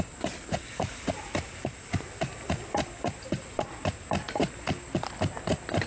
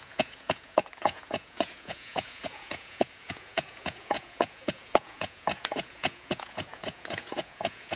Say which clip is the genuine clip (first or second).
first